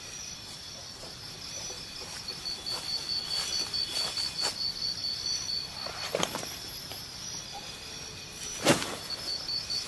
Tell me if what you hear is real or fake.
real